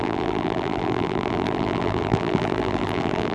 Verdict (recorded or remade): remade